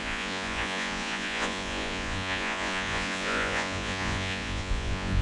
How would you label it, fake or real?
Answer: fake